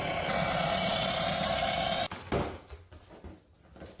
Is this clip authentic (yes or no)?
yes